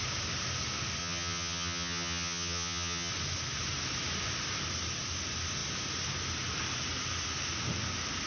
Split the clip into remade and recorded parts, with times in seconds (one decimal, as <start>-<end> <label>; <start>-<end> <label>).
0.0-1.0 recorded; 1.0-3.1 remade; 3.1-8.3 recorded